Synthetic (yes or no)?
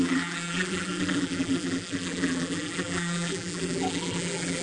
yes